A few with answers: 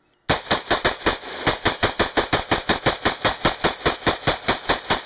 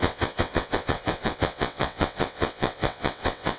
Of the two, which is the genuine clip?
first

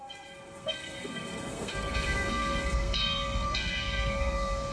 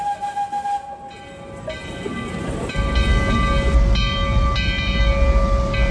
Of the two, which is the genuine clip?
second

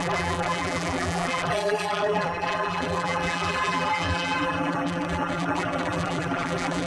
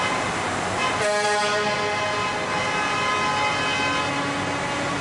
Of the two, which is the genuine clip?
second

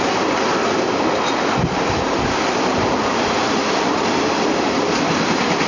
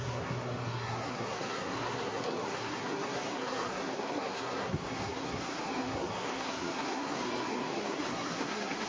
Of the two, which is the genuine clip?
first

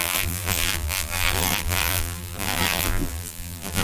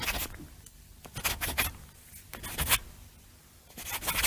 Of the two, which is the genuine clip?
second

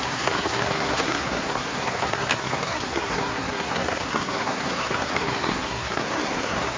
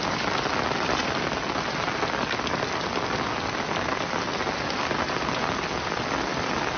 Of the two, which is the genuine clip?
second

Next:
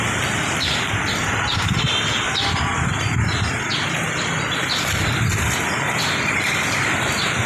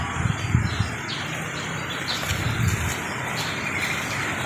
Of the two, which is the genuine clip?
second